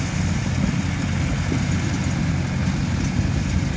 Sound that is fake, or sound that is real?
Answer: real